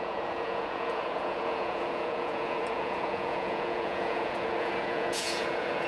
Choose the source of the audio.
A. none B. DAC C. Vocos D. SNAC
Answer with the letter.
C